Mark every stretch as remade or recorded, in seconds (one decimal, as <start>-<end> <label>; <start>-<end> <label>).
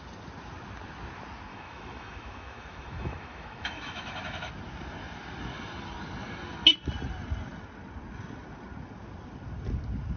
0.0-1.5 recorded; 1.5-4.5 remade; 4.5-10.2 recorded